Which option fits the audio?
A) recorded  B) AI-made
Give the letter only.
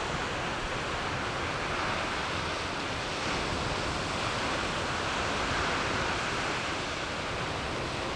A